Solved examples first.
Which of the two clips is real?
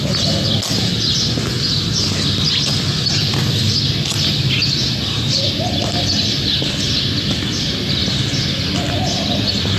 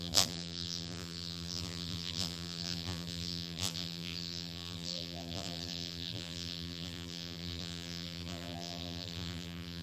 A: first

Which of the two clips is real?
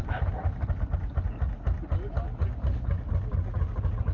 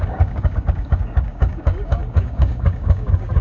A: first